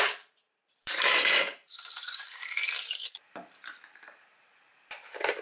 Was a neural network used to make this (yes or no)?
yes